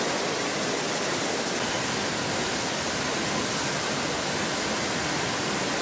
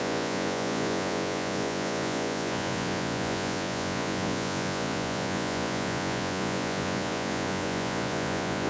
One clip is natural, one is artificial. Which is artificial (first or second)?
second